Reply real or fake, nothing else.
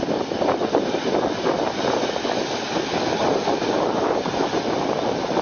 real